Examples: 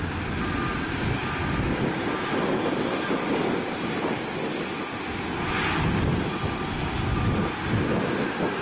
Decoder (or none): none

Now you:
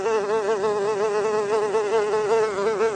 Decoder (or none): none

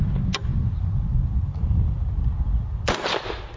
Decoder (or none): none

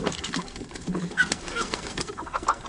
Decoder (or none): codec, SNAC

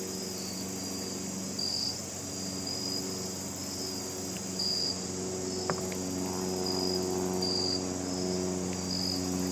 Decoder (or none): none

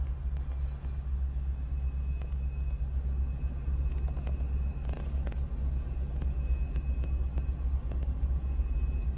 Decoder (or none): none